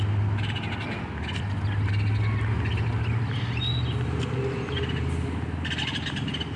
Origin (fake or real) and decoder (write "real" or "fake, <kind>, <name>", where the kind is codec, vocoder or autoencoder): real